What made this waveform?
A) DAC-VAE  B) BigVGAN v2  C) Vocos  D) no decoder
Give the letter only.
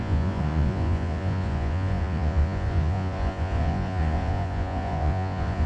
C